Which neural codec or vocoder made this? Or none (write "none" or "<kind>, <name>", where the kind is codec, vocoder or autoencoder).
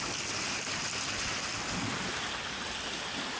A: none